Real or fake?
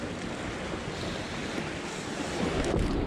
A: real